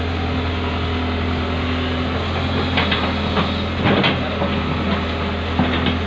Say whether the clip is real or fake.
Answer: real